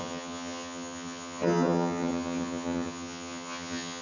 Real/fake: fake